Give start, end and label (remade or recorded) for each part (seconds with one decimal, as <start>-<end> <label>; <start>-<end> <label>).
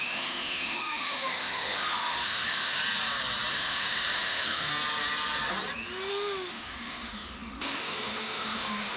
0.0-2.8 remade; 2.8-3.5 recorded; 3.5-4.7 remade; 4.7-6.1 recorded; 6.1-9.0 remade